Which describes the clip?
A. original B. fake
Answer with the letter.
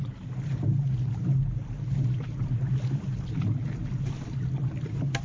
A